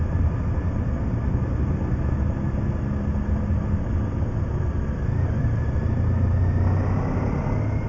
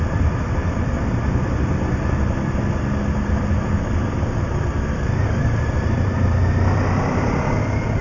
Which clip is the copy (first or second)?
second